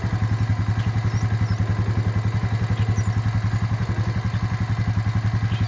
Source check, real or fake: real